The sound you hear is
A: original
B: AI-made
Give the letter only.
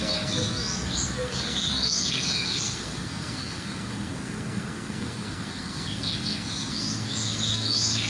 B